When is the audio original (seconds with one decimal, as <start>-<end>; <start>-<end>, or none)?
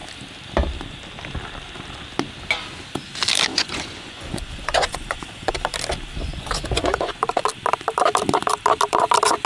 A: 0.0-3.5; 5.5-6.2; 7.4-9.5